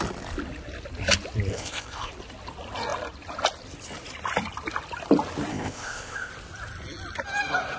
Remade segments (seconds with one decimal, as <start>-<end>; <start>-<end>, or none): 1.5-2.1; 5.5-6.3